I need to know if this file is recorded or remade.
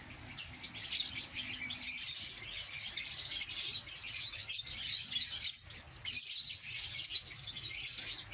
recorded